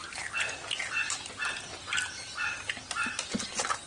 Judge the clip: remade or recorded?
recorded